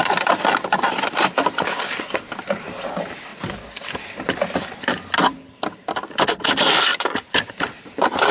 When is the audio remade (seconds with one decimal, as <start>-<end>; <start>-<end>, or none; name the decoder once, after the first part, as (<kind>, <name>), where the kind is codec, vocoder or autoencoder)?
none